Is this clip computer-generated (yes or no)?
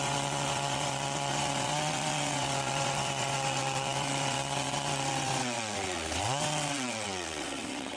yes